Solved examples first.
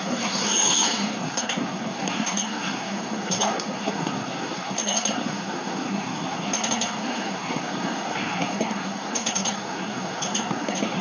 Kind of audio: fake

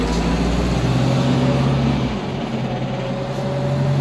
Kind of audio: real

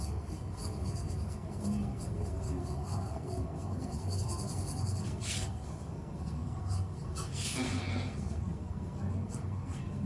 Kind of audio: fake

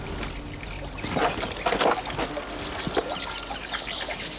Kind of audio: real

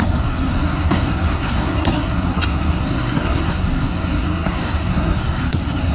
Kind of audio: fake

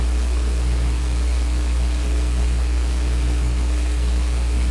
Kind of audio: fake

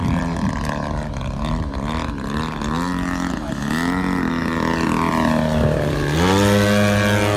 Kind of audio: real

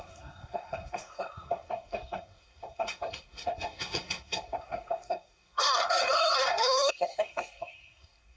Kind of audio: fake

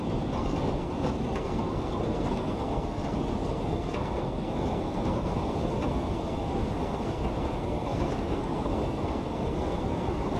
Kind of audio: fake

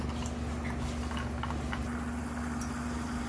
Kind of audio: real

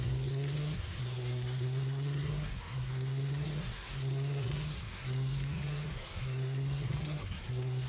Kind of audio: fake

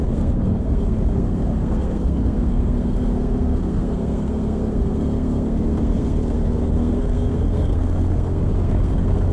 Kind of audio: fake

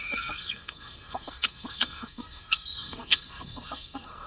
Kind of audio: fake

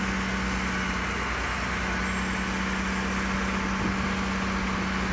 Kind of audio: real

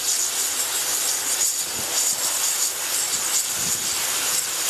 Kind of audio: real